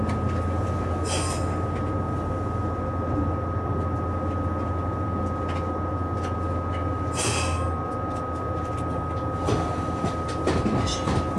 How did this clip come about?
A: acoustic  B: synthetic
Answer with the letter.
A